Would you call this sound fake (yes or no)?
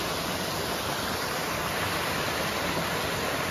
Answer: no